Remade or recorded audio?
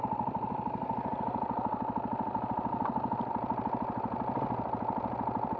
recorded